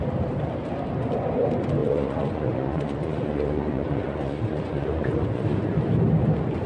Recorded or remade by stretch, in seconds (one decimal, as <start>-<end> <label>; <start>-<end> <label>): 0.0-1.8 recorded; 1.8-5.8 remade; 5.8-6.7 recorded